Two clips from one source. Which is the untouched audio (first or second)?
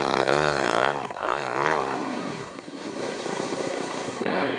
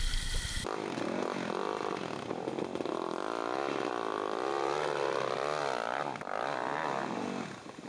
second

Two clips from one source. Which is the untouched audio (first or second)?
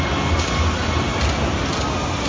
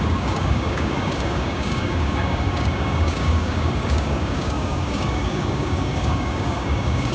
first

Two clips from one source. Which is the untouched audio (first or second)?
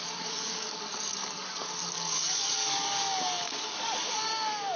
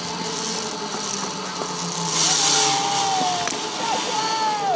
second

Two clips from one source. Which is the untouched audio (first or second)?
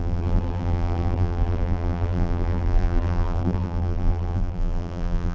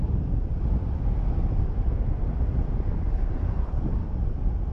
second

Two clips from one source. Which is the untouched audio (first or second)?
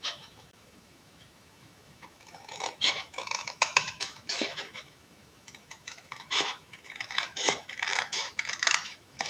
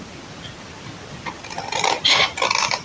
second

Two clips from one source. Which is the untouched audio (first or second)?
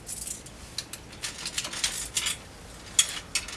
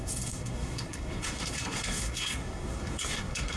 first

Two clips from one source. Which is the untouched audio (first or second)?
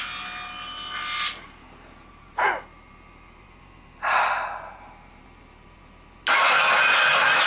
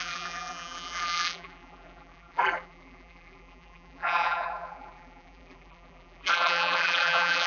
first